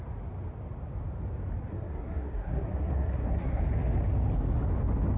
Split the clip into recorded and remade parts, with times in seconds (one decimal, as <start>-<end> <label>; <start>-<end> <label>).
0.0-1.7 recorded; 1.7-3.6 remade; 3.6-5.2 recorded